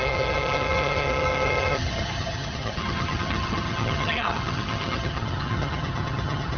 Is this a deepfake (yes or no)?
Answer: yes